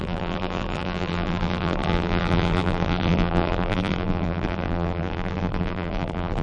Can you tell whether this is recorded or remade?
remade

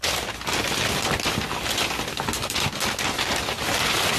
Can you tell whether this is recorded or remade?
recorded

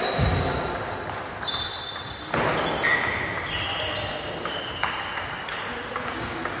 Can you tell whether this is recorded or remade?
recorded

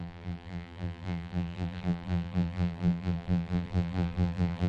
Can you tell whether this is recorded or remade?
remade